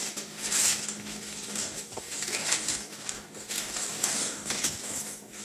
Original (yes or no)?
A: no